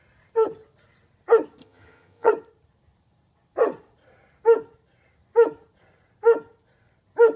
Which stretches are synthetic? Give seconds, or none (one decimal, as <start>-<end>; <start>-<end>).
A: 1.6-2.3